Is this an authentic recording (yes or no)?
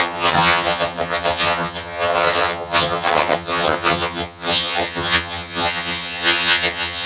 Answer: no